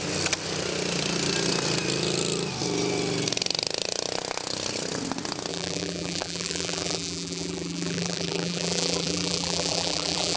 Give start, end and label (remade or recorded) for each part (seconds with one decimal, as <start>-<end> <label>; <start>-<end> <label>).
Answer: 0.0-5.5 recorded; 5.5-10.4 remade